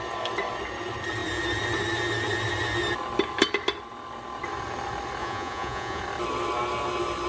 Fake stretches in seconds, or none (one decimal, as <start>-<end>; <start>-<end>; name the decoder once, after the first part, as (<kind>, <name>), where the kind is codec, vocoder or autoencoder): 5.2-6.0 (vocoder, Vocos)